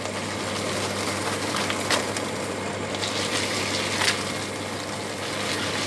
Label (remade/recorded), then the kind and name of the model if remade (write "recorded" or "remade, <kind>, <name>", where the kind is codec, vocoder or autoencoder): recorded